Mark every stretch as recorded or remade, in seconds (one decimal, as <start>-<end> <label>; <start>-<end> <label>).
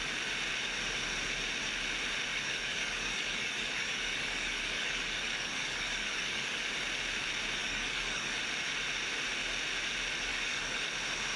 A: 0.0-2.3 recorded; 2.3-6.7 remade; 6.7-7.6 recorded; 7.6-8.4 remade; 8.4-10.3 recorded; 10.3-10.9 remade; 10.9-11.4 recorded